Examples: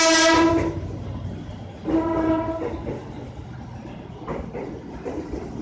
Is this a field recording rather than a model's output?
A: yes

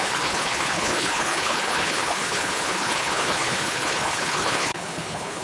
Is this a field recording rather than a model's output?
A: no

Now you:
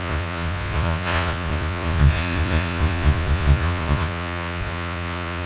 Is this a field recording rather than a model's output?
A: no